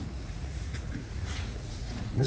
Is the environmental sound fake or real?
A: fake